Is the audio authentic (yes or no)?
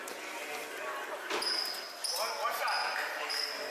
yes